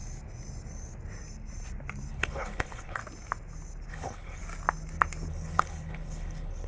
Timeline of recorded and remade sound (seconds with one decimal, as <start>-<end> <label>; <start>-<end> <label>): 0.0-2.1 recorded; 2.1-3.0 remade; 3.0-3.9 recorded; 3.9-4.4 remade; 4.4-5.3 recorded; 5.3-6.7 remade